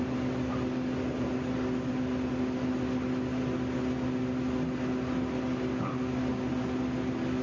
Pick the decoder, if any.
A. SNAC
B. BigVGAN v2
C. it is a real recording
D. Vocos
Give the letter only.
C